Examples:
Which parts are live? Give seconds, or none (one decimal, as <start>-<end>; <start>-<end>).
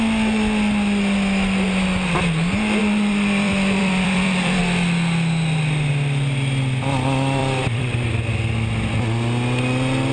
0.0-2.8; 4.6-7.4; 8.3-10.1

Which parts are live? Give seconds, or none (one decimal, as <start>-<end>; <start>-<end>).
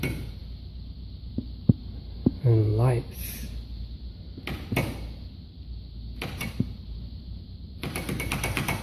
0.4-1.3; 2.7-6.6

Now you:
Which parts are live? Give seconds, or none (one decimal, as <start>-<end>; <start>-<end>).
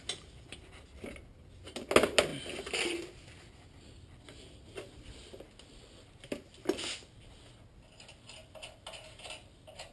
0.0-9.9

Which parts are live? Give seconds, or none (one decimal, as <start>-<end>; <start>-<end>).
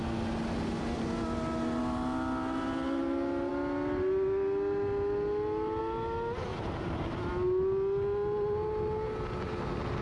0.0-6.5; 7.1-10.0